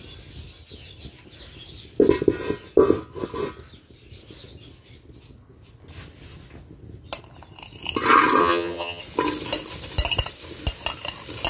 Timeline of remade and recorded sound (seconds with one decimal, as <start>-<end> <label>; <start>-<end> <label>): 0.0-8.4 recorded; 8.4-9.0 remade; 9.0-11.5 recorded